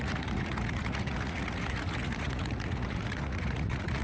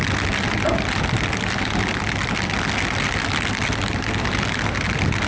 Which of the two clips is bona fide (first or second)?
second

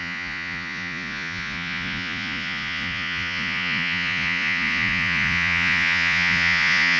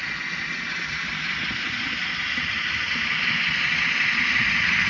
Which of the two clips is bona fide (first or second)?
second